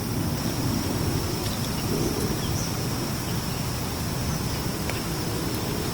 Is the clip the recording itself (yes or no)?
yes